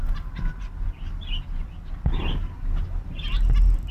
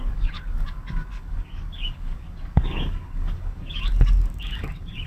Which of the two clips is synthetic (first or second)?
second